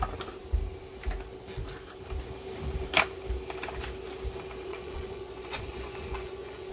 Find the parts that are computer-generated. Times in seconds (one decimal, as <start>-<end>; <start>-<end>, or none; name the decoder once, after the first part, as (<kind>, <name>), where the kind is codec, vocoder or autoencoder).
4.7-6.7 (vocoder, Vocos)